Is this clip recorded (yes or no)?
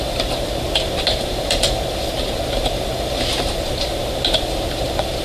no